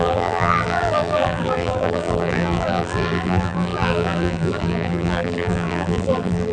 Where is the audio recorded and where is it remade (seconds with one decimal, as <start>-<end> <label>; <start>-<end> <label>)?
0.0-6.5 remade